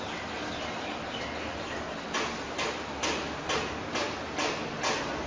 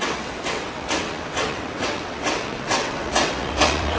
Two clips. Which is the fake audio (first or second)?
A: second